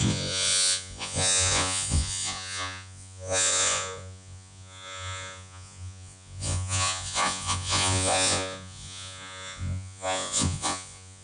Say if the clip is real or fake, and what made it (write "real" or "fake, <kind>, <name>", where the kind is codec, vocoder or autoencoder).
fake, vocoder, Vocos